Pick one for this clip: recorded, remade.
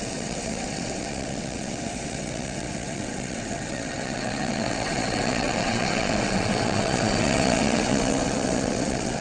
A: remade